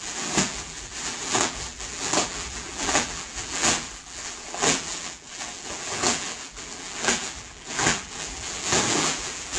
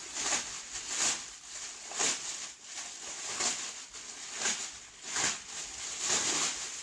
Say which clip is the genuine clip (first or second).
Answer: second